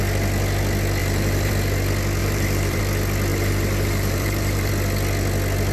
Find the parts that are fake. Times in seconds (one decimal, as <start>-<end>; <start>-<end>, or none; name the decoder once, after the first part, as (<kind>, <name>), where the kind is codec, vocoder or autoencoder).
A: 1.0-1.5 (vocoder, BigVGAN v2); 2.2-2.8; 3.3-4.7